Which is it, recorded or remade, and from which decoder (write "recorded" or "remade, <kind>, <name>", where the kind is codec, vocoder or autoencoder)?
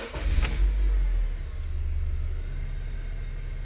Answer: recorded